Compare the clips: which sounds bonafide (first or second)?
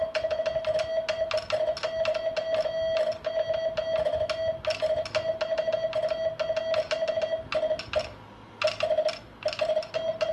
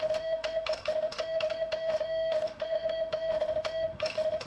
first